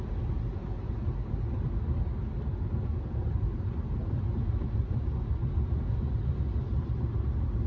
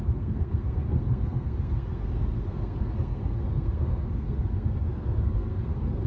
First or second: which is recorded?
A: first